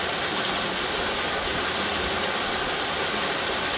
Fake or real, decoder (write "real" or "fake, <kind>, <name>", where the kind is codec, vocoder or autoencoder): real